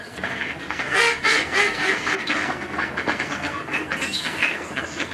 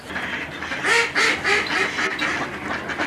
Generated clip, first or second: first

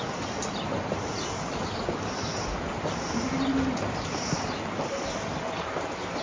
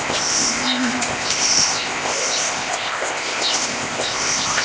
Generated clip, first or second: second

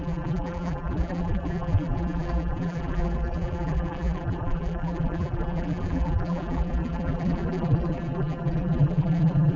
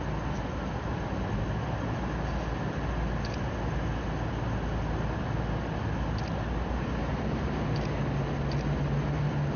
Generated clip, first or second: first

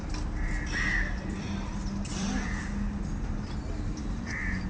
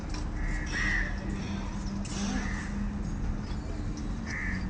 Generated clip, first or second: first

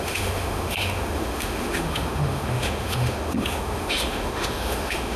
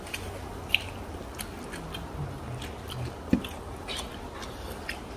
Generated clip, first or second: first